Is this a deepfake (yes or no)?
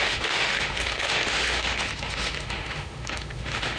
yes